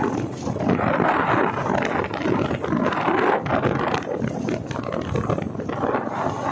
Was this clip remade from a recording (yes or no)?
no